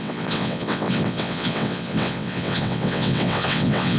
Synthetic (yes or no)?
yes